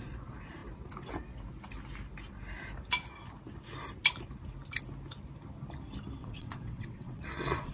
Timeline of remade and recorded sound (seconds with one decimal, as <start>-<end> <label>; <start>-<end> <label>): 0.0-6.2 recorded; 6.2-7.7 remade